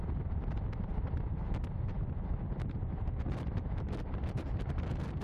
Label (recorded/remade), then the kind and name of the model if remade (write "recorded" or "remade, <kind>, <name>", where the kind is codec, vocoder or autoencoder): recorded